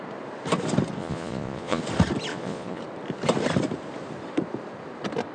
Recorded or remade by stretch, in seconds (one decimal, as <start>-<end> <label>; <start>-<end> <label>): 0.0-1.0 recorded; 1.0-1.8 remade; 1.8-2.3 recorded; 2.3-2.8 remade; 2.8-5.3 recorded

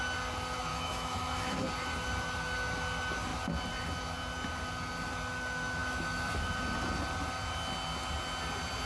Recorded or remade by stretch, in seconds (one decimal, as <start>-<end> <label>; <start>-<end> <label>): 0.0-0.7 recorded; 0.7-1.6 remade; 1.6-5.8 recorded; 5.8-6.5 remade; 6.5-8.9 recorded